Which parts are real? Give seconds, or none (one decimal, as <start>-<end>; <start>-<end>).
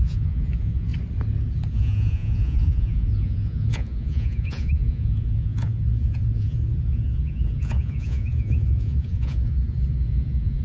0.9-1.7